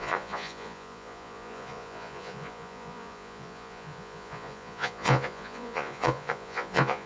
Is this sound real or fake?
fake